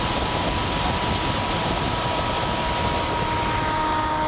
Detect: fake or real real